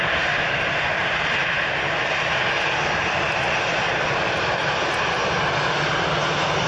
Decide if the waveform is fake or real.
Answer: real